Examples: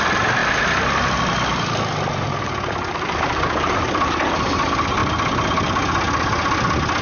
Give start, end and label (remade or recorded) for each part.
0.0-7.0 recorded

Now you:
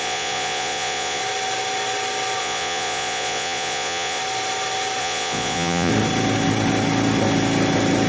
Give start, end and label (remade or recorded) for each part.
0.0-1.2 remade; 1.2-2.4 recorded; 2.4-4.2 remade; 4.2-5.0 recorded; 5.0-5.9 remade; 5.9-8.1 recorded